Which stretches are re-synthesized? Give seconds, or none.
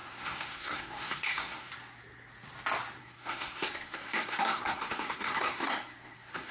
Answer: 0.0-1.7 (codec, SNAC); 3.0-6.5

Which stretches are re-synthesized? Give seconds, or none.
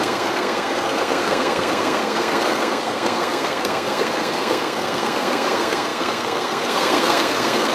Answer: 0.0-7.7 (codec, SNAC)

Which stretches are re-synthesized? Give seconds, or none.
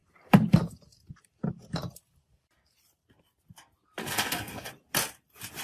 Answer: 4.0-4.7 (codec, SNAC)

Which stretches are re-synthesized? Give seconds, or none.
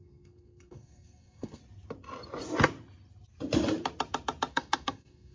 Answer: 0.0-1.6 (codec, SNAC); 4.5-5.3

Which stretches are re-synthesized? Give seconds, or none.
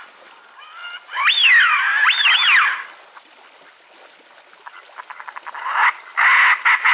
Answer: none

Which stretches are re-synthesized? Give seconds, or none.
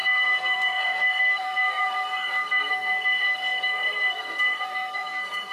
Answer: 0.0-5.5 (codec, SNAC)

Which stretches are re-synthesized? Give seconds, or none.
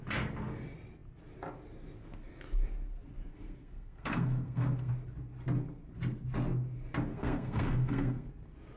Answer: 3.3-4.9 (codec, SNAC); 7.1-8.3